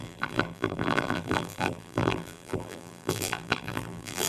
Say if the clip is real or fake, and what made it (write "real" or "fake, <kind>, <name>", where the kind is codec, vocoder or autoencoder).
fake, vocoder, BigVGAN v2